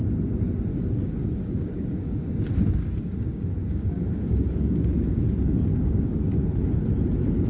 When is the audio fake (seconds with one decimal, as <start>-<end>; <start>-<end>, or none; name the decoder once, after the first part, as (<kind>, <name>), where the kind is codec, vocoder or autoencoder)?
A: 0.7-5.2 (codec, DAC); 5.7-6.4